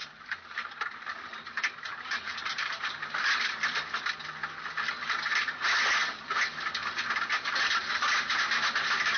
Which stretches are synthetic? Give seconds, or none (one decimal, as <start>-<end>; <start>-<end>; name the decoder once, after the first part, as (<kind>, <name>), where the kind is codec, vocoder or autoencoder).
0.0-1.3 (vocoder, BigVGAN v2); 1.9-3.2